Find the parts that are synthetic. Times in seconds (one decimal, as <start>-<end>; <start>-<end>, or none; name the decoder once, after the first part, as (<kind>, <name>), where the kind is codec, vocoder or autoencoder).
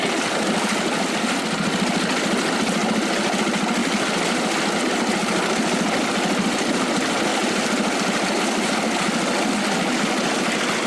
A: 3.8-4.8 (vocoder, BigVGAN v2); 7.3-8.4